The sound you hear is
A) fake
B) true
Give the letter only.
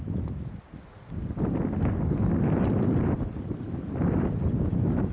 B